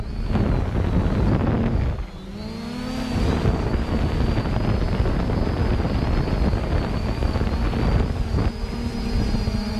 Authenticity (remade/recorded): recorded